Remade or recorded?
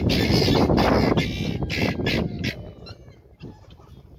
recorded